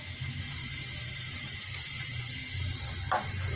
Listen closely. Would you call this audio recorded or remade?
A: recorded